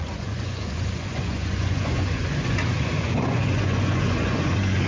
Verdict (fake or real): fake